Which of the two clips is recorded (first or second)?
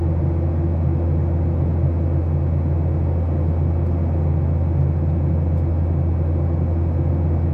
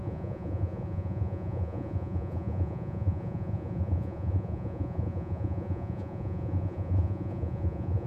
first